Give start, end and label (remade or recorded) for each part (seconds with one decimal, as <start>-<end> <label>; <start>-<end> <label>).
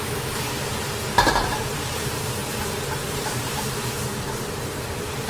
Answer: 0.0-5.3 remade